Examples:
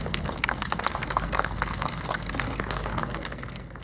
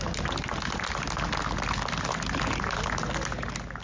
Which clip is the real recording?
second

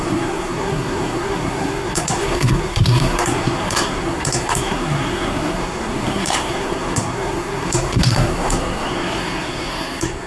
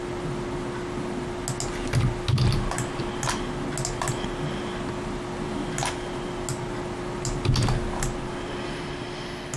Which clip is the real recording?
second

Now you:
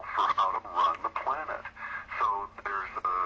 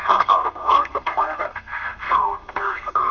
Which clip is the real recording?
first